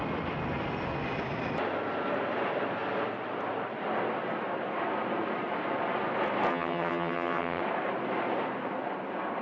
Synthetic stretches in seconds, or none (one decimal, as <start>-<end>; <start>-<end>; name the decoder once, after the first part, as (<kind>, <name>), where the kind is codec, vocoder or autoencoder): 6.5-7.6 (vocoder, HiFi-GAN)